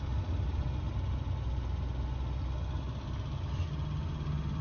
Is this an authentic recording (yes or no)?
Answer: yes